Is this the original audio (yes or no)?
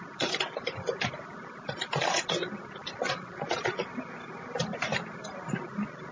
yes